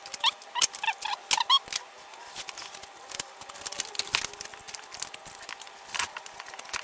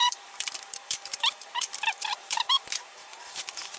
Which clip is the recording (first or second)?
first